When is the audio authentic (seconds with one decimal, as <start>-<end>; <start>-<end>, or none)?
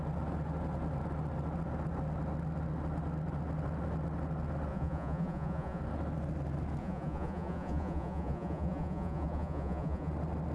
0.0-4.7; 5.8-6.8; 10.1-10.5